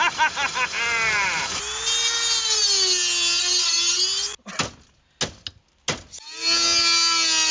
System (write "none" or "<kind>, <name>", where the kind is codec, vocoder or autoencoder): none